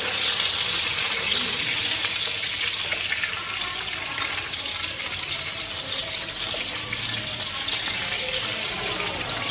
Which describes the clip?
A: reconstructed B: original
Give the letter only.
B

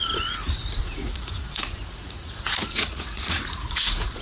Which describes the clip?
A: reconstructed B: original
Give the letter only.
A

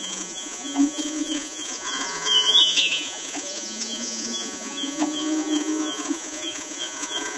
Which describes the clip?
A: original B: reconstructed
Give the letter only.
B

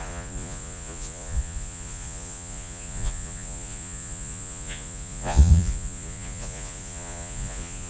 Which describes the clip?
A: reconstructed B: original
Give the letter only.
A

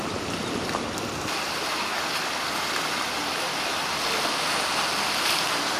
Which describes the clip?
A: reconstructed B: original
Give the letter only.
B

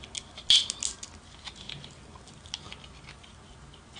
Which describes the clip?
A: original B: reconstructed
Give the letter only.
A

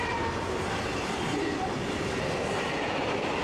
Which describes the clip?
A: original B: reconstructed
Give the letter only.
A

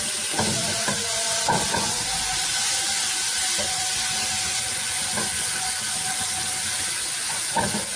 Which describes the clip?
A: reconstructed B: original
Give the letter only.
A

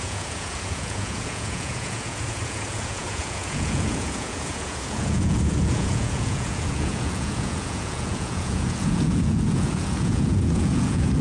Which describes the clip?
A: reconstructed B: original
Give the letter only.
A